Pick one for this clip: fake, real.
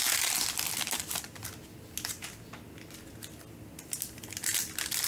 real